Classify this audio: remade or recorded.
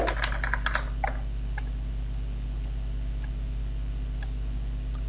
recorded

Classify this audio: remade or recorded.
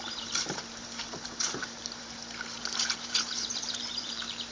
remade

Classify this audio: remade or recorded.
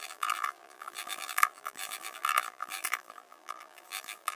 remade